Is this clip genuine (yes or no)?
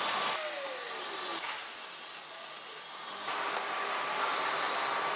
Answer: yes